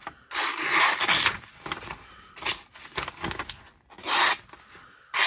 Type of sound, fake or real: real